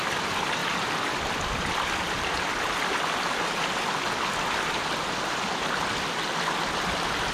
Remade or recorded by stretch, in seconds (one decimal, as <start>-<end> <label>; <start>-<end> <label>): 0.0-7.3 recorded